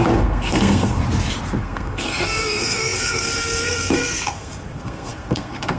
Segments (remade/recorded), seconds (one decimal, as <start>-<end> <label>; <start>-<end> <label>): 0.0-1.0 remade; 1.0-1.6 recorded; 1.6-5.8 remade